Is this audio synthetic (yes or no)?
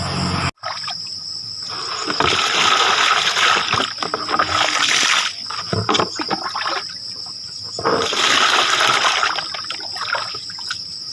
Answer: no